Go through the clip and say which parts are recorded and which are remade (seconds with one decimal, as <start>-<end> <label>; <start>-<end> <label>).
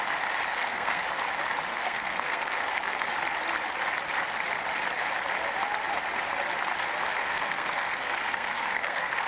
0.0-0.5 recorded; 0.5-1.0 remade; 1.0-1.7 recorded; 1.7-3.1 remade; 3.1-7.2 recorded; 7.2-9.3 remade